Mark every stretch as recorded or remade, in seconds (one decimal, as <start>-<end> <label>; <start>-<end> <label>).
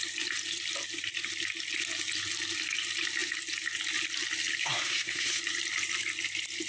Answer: 0.0-4.6 recorded; 4.6-5.4 remade; 5.4-6.7 recorded